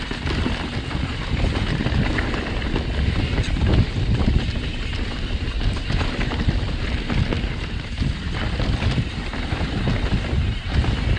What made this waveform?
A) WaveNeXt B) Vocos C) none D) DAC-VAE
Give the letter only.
C